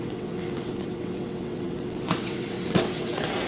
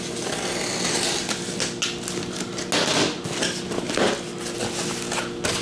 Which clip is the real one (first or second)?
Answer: second